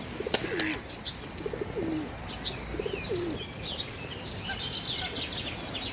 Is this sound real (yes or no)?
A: yes